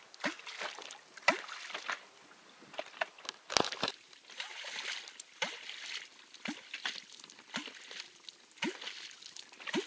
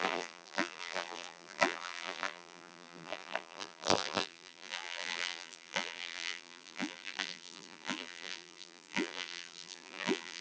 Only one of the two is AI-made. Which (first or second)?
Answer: second